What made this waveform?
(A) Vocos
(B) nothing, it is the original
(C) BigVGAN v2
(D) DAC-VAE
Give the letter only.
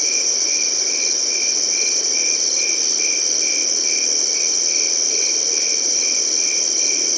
B